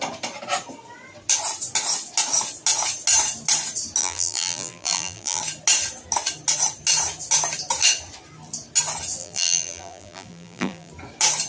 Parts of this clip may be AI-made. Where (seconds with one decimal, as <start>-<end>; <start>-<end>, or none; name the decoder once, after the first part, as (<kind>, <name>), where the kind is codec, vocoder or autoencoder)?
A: 4.0-5.4 (vocoder, BigVGAN v2); 9.2-10.9

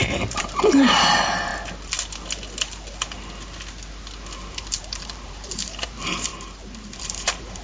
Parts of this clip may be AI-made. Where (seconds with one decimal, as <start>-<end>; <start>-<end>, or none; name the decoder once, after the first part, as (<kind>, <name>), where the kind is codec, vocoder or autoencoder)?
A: 0.0-1.5 (vocoder, BigVGAN v2); 4.5-7.6

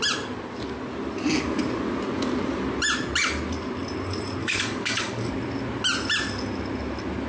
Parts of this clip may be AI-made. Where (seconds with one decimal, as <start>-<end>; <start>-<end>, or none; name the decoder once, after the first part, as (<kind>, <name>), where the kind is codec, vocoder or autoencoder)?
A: 4.4-5.3 (codec, DAC)